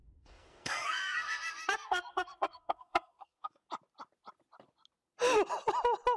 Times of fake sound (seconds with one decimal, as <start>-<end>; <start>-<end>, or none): 0.0-3.7

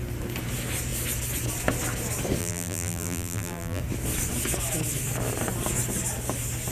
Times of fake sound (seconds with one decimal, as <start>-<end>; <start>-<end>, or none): 2.4-3.8

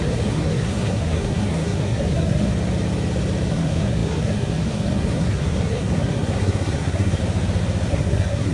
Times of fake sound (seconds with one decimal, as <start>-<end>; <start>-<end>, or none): 0.0-2.5; 3.5-7.2; 7.9-8.5

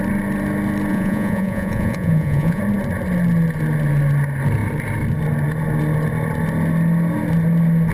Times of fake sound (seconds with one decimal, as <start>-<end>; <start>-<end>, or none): 0.9-2.6